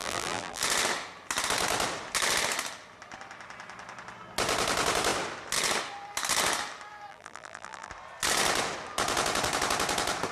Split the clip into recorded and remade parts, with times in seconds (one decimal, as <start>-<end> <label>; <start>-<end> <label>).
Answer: 0.0-0.6 remade; 0.6-7.1 recorded; 7.1-7.9 remade; 7.9-10.3 recorded